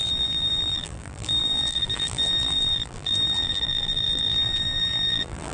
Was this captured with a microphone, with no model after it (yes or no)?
no